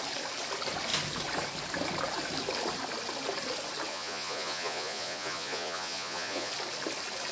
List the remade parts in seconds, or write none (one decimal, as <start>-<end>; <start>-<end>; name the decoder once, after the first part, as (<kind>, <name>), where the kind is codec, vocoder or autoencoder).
3.9-6.5 (vocoder, Vocos)